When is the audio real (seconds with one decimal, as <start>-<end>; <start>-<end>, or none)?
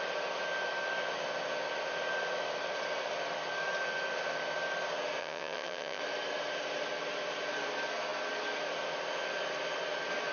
0.0-5.2; 6.0-10.3